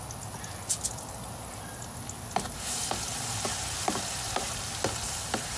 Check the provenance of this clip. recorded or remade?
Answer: recorded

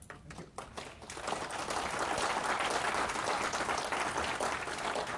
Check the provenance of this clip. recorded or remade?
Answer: recorded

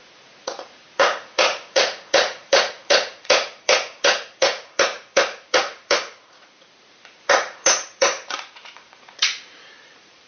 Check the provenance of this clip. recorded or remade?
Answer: remade